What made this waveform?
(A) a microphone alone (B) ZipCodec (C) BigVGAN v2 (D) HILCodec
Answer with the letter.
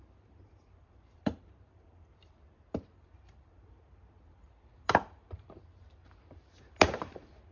C